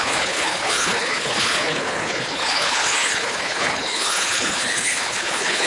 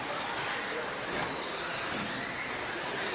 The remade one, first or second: first